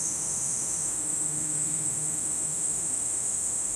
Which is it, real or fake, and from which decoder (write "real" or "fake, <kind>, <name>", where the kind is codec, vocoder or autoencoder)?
fake, autoencoder, DAC-VAE